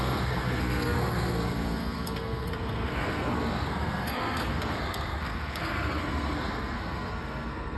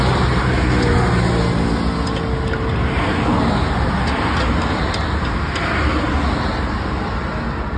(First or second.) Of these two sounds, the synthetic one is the first